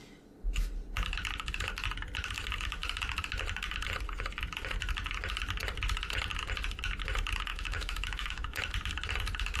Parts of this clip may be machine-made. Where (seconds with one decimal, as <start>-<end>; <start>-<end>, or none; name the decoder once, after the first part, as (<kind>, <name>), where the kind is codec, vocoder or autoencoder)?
7.5-8.6 (autoencoder, DAC-VAE)